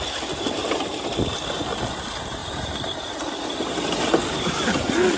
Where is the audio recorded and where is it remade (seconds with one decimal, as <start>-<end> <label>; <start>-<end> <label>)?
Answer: 0.0-2.4 recorded; 2.4-4.5 remade; 4.5-5.2 recorded